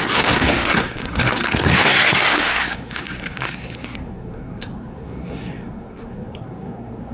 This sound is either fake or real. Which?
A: fake